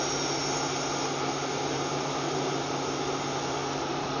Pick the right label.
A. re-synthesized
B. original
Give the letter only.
B